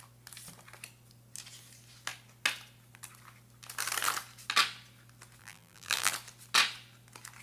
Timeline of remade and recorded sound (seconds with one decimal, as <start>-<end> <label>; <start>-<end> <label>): 0.0-5.4 recorded; 5.4-6.1 remade; 6.1-7.4 recorded

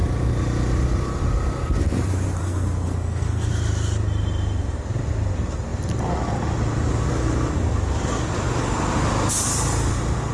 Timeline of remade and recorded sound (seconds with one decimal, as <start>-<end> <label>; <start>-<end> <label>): 0.0-2.4 recorded; 2.4-3.5 remade; 3.5-10.3 recorded

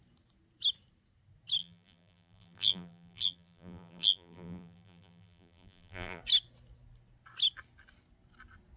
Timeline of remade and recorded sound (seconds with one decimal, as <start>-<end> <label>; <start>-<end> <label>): 0.0-1.6 recorded; 1.6-6.2 remade; 6.2-8.8 recorded

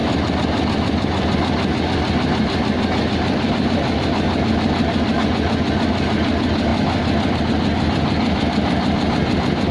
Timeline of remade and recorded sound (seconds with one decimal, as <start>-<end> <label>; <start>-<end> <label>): 0.0-6.7 recorded; 6.7-7.4 remade; 7.4-9.7 recorded